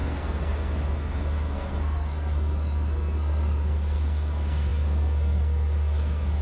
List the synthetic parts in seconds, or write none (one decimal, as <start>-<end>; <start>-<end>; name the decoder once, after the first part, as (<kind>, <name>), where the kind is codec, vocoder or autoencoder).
0.0-6.4 (codec, SNAC)